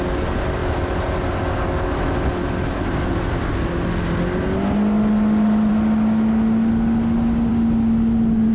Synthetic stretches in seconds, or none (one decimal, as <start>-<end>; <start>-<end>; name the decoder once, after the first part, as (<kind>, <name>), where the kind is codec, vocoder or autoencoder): none